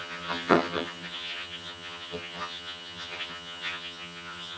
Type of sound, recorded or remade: remade